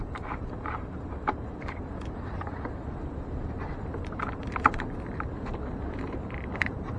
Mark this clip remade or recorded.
remade